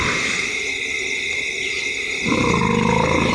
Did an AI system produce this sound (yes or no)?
no